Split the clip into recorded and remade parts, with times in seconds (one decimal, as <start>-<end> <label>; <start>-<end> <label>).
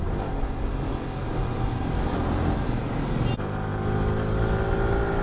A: 0.0-1.2 recorded; 1.2-2.6 remade; 2.6-5.2 recorded